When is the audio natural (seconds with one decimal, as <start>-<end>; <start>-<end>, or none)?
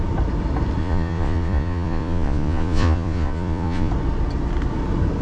0.0-0.8; 3.9-5.2